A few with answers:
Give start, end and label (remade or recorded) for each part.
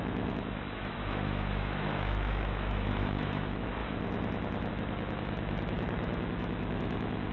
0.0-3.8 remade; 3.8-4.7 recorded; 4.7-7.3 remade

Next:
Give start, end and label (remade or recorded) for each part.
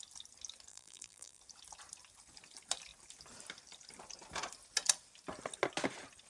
0.0-0.7 recorded; 0.7-1.4 remade; 1.4-6.3 recorded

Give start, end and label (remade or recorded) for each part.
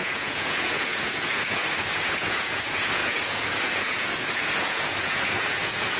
0.0-6.0 remade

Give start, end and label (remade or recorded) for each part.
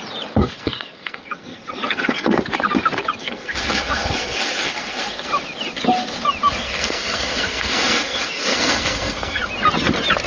0.0-0.4 recorded; 0.4-2.4 remade; 2.4-3.2 recorded; 3.2-5.3 remade; 5.3-6.6 recorded; 6.6-9.4 remade; 9.4-10.3 recorded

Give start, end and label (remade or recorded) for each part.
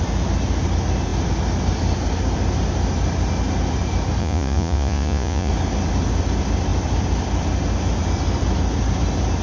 0.0-4.2 recorded; 4.2-5.5 remade; 5.5-9.4 recorded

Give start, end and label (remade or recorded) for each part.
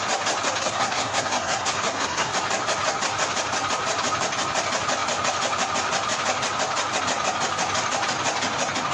0.0-0.6 recorded; 0.6-2.3 remade; 2.3-8.9 recorded